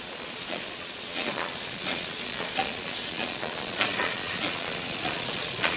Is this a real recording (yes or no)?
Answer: no